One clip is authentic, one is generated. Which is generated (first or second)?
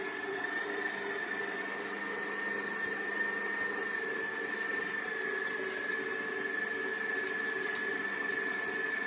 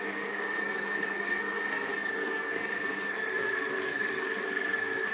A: second